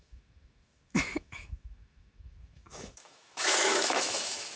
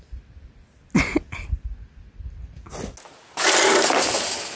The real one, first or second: second